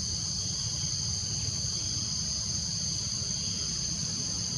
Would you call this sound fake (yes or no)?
no